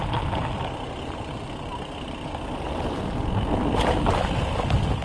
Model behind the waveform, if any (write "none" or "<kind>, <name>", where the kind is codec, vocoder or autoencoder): none